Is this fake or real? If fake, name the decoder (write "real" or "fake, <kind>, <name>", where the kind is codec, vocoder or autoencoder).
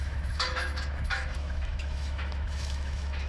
fake, autoencoder, DAC-VAE